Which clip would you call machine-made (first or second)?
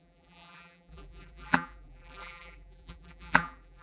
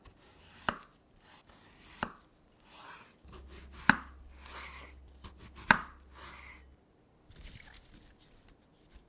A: first